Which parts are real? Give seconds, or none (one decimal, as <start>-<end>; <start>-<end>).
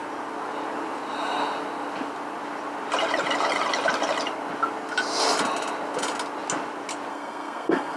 0.0-7.1